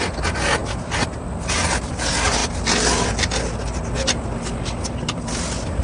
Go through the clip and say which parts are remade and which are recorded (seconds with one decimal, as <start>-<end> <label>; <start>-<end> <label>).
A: 0.0-5.8 recorded